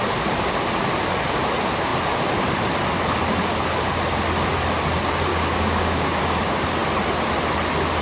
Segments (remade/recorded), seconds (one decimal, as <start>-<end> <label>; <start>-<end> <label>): 0.0-5.3 recorded; 5.3-6.2 remade; 6.2-8.0 recorded